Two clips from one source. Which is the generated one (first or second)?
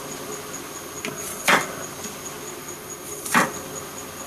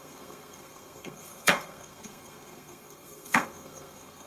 second